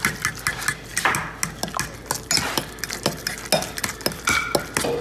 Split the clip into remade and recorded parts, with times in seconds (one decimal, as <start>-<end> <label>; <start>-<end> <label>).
0.0-5.0 recorded